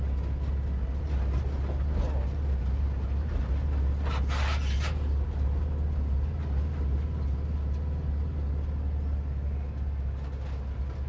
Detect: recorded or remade recorded